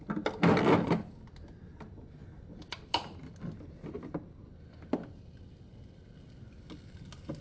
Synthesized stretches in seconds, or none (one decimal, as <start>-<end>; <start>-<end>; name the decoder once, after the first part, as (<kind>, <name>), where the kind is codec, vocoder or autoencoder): none